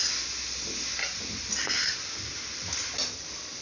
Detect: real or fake real